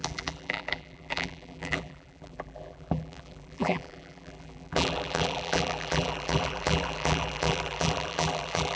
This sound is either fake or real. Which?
fake